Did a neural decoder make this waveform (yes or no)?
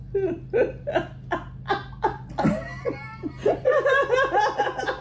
no